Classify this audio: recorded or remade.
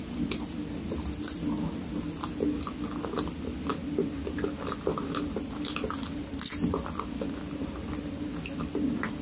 recorded